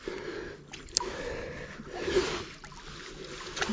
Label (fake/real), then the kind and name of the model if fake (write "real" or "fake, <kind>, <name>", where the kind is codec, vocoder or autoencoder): real